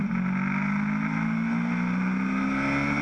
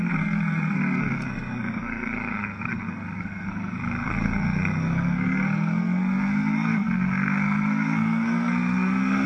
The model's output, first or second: second